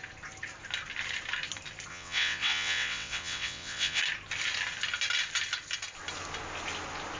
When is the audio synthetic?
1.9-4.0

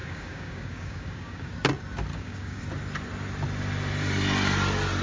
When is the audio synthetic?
0.0-1.5; 2.1-2.6

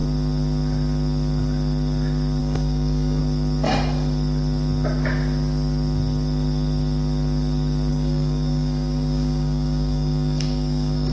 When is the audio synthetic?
2.4-3.2; 7.9-11.1